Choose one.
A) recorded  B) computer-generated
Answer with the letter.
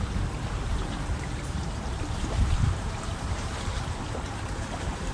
B